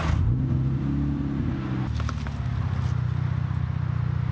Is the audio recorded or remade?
recorded